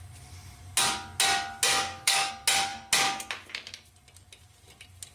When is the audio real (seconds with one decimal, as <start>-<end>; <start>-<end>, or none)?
0.0-1.7; 2.3-5.1